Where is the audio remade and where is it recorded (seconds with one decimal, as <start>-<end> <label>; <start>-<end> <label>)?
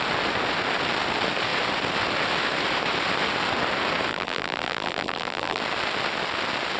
0.0-4.1 recorded; 4.1-5.6 remade; 5.6-6.8 recorded